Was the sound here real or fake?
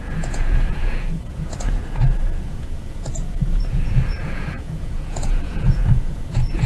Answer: fake